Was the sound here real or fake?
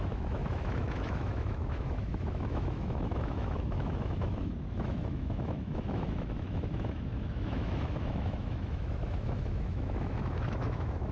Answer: fake